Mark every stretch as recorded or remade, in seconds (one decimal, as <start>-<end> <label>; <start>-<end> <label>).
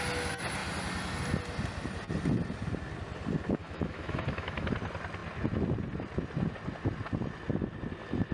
0.0-3.6 recorded; 3.6-4.7 remade; 4.7-8.3 recorded